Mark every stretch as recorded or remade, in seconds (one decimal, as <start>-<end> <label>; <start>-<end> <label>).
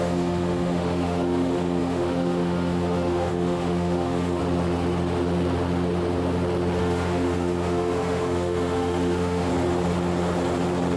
0.0-4.4 remade; 4.4-6.8 recorded; 6.8-9.5 remade; 9.5-11.0 recorded